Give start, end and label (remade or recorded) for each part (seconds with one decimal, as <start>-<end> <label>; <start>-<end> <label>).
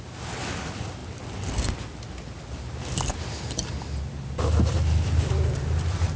0.0-6.2 recorded